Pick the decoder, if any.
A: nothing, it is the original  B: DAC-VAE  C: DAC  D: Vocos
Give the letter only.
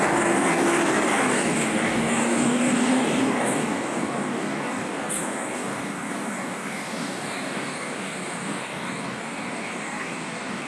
C